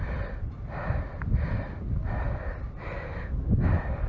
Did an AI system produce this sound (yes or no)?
no